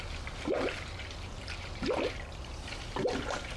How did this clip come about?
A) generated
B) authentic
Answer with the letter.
B